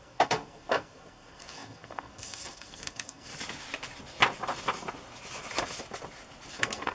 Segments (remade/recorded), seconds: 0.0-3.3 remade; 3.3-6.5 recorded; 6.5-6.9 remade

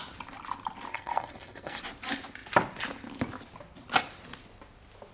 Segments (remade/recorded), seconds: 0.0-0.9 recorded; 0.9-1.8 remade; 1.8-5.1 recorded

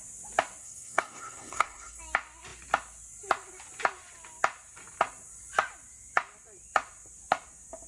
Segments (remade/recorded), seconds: 0.0-0.6 recorded; 0.6-2.0 remade; 2.0-7.9 recorded

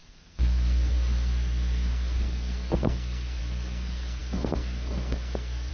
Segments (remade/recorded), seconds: 0.0-5.7 remade

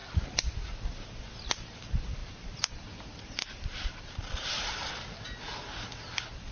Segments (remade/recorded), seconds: 0.0-2.2 recorded; 2.2-4.9 remade; 4.9-6.5 recorded

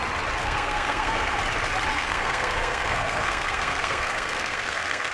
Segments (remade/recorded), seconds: 0.0-0.4 recorded; 0.4-1.4 remade; 1.4-1.9 recorded; 1.9-5.1 remade

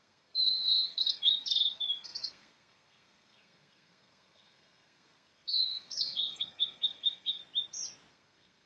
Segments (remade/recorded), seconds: 0.0-7.4 remade; 7.4-8.1 recorded; 8.1-8.7 remade